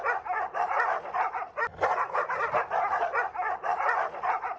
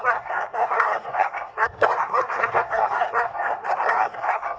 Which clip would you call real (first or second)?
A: first